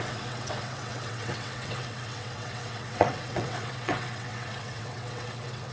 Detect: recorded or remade remade